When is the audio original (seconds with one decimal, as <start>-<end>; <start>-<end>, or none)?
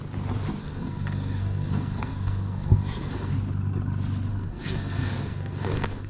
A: 0.0-0.6; 3.3-4.3